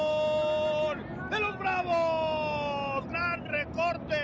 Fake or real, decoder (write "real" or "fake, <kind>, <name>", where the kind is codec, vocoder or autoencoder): real